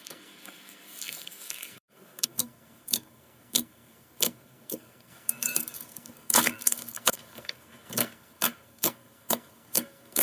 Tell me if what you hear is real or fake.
fake